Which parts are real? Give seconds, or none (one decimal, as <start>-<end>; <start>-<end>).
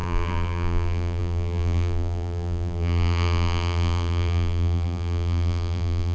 none